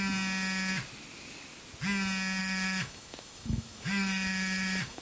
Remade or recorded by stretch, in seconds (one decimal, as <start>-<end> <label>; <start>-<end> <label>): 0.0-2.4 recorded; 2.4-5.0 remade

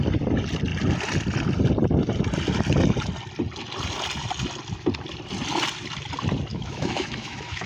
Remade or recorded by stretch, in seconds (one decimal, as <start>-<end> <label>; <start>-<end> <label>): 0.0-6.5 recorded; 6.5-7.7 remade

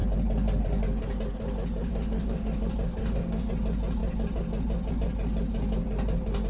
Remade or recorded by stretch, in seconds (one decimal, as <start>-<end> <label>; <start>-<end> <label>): 0.0-1.9 recorded; 1.9-2.6 remade; 2.6-3.0 recorded; 3.0-3.5 remade; 3.5-6.5 recorded

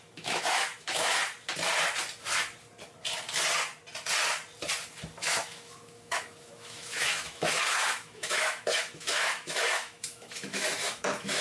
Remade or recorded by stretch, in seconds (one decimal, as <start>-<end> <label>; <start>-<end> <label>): 0.0-1.2 remade; 1.2-5.2 recorded; 5.2-11.4 remade

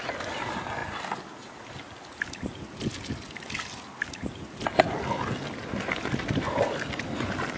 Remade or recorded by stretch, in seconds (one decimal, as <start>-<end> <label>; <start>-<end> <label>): 0.0-7.6 recorded